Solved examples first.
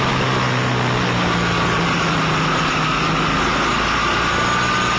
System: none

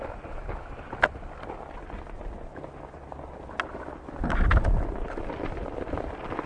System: none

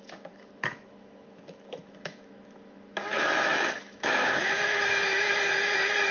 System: autoencoder, DAC-VAE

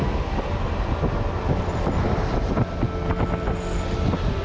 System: none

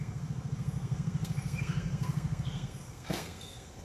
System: codec, SNAC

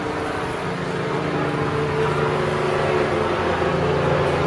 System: none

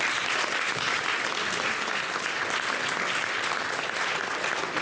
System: none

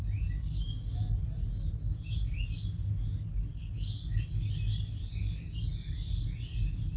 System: none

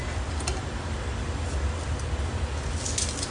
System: none